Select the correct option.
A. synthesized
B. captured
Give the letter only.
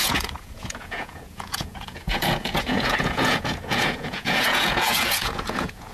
A